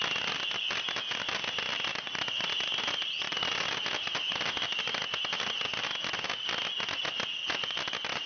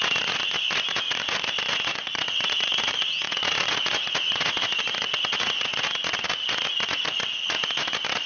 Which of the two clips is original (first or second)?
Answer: first